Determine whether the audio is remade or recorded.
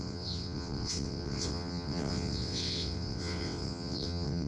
remade